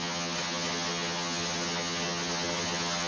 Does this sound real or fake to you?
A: fake